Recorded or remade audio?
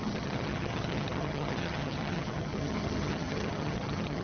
remade